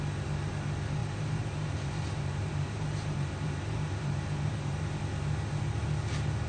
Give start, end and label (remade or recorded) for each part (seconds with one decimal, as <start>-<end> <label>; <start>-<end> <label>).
0.0-1.0 recorded; 1.0-4.9 remade; 4.9-6.5 recorded